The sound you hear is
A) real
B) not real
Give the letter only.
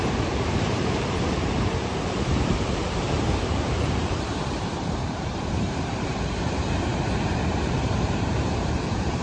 B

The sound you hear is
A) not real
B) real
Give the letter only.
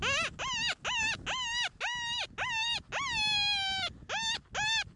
B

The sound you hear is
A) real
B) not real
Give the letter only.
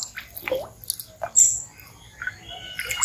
A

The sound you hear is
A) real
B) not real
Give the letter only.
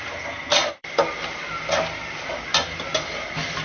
B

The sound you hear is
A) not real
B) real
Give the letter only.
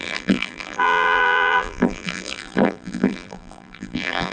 A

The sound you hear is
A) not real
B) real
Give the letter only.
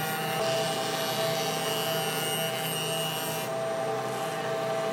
B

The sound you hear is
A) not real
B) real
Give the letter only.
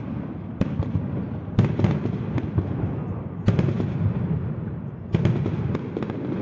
B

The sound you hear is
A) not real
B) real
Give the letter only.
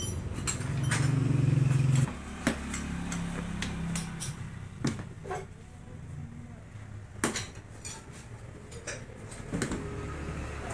B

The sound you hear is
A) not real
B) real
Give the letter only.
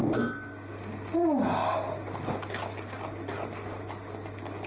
B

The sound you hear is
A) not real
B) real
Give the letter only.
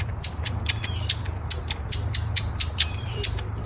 A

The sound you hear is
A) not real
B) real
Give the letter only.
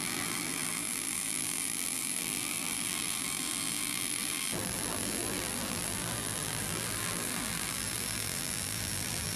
A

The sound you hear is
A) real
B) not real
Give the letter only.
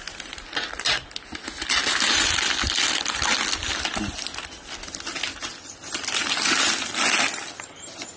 A